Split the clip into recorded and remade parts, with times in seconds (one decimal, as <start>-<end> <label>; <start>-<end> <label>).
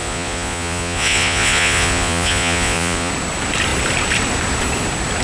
0.0-3.1 remade; 3.1-5.2 recorded